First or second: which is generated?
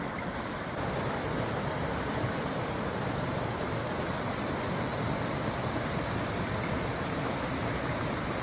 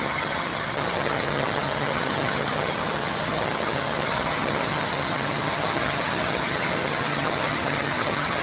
second